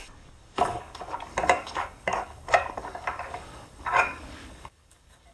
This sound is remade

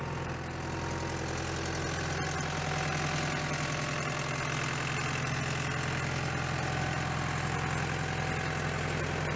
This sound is recorded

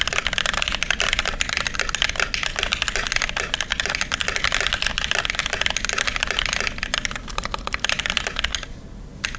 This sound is recorded